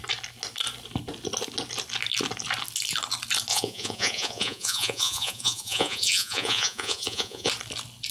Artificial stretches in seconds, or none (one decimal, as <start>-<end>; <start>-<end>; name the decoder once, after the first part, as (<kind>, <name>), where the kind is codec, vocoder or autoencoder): 3.5-7.5 (vocoder, Vocos)